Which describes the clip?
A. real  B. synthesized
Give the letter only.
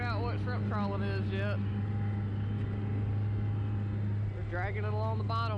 A